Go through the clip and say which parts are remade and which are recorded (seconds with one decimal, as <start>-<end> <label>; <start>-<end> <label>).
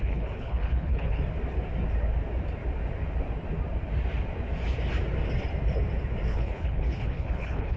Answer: 0.0-1.2 remade; 1.2-6.3 recorded; 6.3-7.8 remade